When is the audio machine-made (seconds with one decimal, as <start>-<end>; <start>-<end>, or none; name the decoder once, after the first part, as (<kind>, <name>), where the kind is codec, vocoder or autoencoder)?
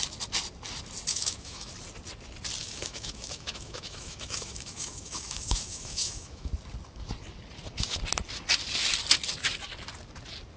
1.1-1.7 (autoencoder, DAC-VAE); 2.6-6.5